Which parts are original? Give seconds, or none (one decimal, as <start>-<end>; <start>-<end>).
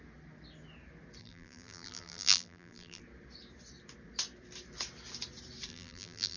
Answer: 0.0-1.2; 3.0-5.7